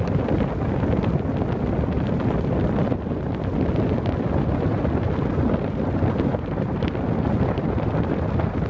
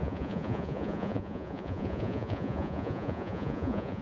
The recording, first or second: first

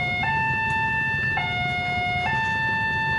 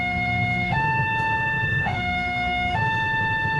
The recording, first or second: first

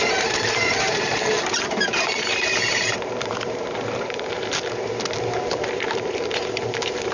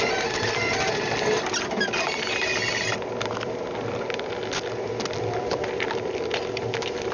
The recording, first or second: second